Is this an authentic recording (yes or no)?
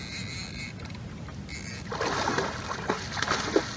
yes